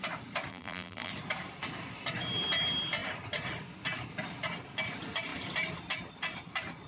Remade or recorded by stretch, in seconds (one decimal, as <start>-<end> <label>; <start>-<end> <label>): 0.0-0.5 recorded; 0.5-1.1 remade; 1.1-6.9 recorded